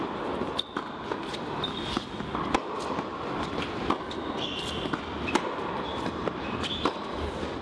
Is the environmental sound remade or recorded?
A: recorded